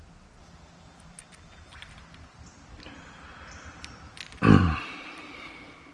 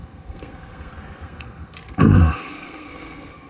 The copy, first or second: second